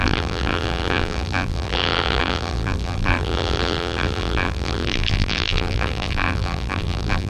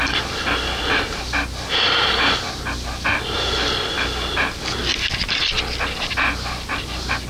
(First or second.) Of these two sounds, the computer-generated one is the first